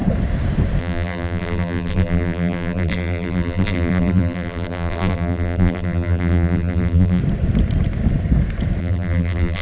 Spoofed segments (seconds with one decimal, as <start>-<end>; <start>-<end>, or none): 0.8-7.2; 8.8-9.6